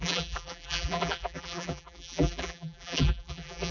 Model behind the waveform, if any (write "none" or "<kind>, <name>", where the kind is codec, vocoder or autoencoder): vocoder, BigVGAN v2